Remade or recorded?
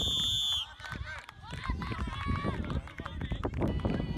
recorded